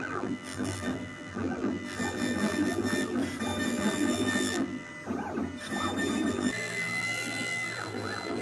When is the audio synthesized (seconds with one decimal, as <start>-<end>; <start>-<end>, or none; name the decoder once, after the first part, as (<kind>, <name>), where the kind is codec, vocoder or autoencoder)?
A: 0.0-3.2 (vocoder, BigVGAN v2); 3.7-4.9; 6.3-8.4